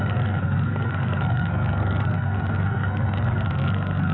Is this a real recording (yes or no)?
no